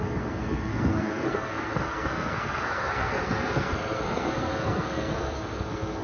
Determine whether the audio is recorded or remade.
remade